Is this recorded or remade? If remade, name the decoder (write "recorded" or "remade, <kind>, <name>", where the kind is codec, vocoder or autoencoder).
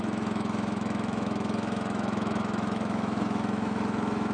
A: remade, autoencoder, DAC-VAE